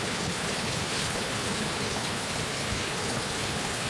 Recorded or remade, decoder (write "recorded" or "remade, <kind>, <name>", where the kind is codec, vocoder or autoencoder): remade, codec, HILCodec